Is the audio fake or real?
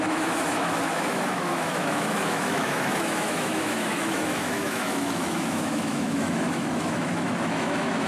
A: fake